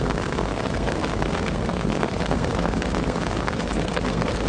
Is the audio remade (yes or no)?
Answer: yes